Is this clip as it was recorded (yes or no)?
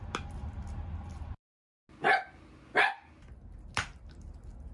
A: yes